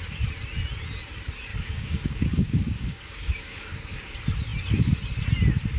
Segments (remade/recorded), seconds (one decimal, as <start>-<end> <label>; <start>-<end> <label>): 0.0-1.5 recorded; 1.5-4.1 remade; 4.1-5.8 recorded

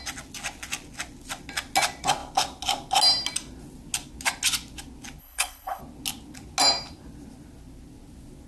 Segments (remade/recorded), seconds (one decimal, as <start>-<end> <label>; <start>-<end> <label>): 0.0-5.2 recorded; 5.2-5.8 remade; 5.8-8.5 recorded

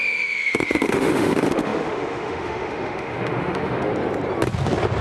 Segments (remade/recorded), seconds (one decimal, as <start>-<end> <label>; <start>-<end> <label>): 0.0-3.9 remade; 3.9-5.0 recorded